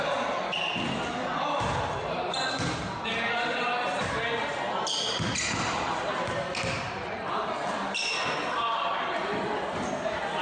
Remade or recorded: recorded